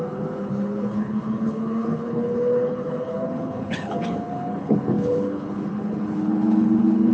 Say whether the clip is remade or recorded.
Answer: remade